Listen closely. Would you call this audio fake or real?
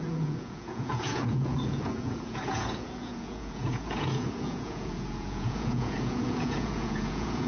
fake